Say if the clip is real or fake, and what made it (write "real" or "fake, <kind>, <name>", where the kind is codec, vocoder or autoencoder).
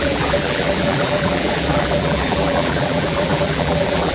fake, vocoder, BigVGAN v2